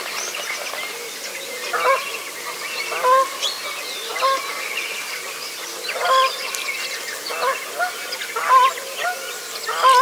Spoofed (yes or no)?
no